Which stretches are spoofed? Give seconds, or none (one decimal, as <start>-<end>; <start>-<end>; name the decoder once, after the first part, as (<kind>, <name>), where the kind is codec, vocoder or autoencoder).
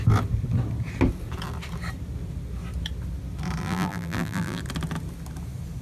3.6-4.6 (vocoder, BigVGAN v2)